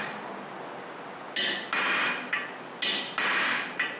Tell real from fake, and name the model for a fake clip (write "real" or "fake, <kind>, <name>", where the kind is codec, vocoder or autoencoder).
real